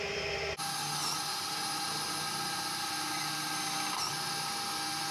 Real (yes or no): yes